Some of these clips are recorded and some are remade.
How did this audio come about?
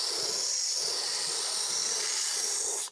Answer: recorded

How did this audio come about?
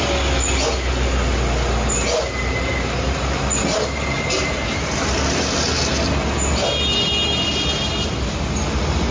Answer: recorded